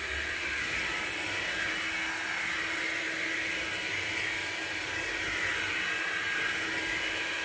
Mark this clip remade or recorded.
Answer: recorded